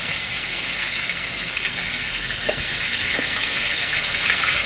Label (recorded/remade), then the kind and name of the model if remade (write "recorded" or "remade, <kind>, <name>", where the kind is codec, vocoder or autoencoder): remade, codec, SNAC